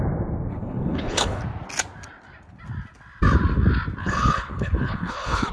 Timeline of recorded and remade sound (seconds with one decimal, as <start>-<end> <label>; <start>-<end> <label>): 0.0-0.5 recorded; 0.5-1.4 remade; 1.4-4.0 recorded; 4.0-5.5 remade